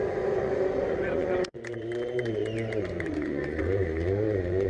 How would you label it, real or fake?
fake